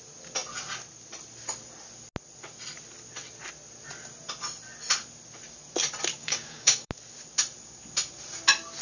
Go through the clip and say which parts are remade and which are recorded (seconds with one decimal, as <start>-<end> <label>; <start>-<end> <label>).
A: 0.0-6.2 recorded; 6.2-6.9 remade; 6.9-8.8 recorded